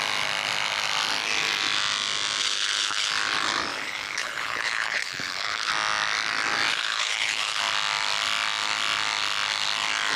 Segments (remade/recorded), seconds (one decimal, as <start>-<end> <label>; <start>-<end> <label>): 0.0-2.4 recorded; 2.4-3.1 remade; 3.1-3.7 recorded; 3.7-5.7 remade; 5.7-6.7 recorded; 6.7-7.6 remade; 7.6-10.2 recorded